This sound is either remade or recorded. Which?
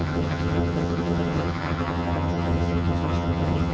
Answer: remade